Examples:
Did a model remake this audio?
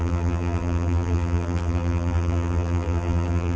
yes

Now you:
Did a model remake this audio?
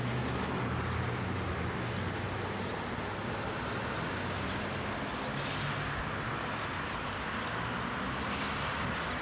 no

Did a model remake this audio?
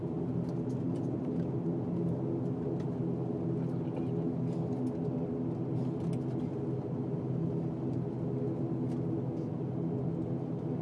no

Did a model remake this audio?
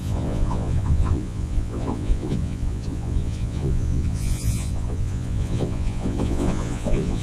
yes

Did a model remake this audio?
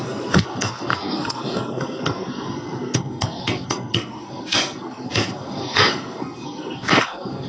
yes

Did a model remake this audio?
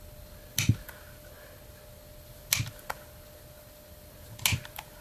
no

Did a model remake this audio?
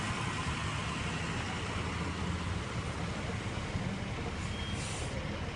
no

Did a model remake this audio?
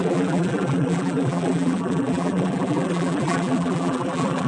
yes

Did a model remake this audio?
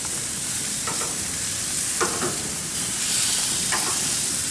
yes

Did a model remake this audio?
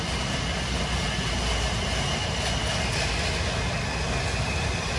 no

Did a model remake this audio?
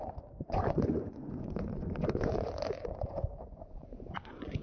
yes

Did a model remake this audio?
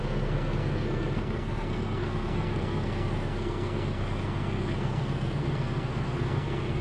yes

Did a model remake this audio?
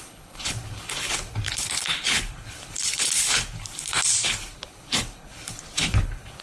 yes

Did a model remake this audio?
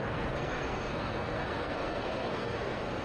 yes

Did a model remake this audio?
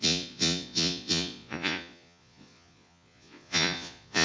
yes